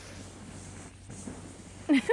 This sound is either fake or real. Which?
real